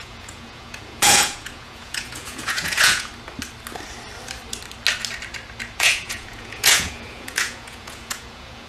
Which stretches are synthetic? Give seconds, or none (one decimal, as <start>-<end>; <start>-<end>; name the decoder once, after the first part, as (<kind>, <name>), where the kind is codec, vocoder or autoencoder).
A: 0.0-3.1 (vocoder, Vocos); 5.8-8.7